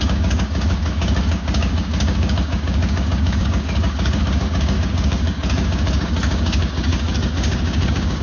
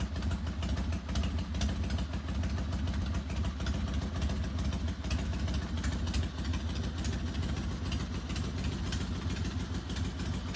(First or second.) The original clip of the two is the second